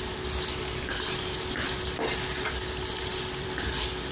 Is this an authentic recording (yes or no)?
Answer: no